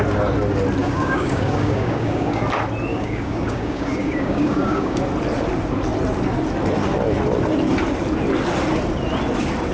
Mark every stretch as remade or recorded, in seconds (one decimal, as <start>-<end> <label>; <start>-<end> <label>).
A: 0.0-0.8 recorded; 0.8-2.4 remade; 2.4-2.9 recorded; 2.9-5.0 remade; 5.0-9.7 recorded